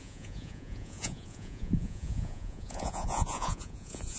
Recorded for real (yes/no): no